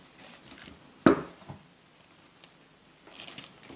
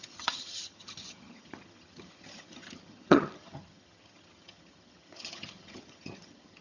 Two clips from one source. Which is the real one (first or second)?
first